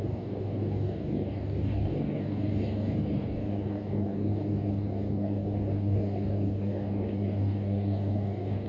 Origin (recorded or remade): remade